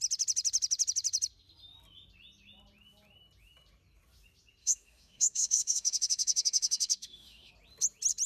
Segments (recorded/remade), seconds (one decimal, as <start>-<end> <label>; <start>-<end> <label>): 0.0-4.6 recorded; 4.6-7.5 remade; 7.5-8.3 recorded